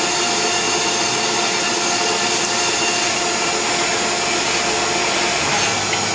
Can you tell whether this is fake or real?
real